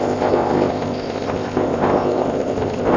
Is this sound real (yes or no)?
no